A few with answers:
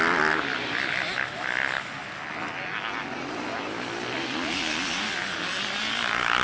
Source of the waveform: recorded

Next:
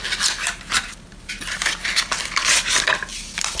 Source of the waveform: recorded